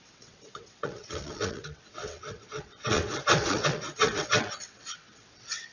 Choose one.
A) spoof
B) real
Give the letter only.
A